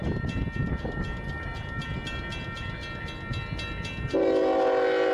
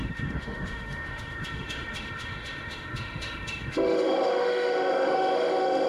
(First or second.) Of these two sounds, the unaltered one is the first